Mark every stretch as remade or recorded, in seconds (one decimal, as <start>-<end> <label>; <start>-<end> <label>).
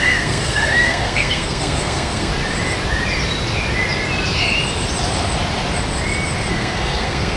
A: 0.0-2.3 remade; 2.3-6.5 recorded; 6.5-7.4 remade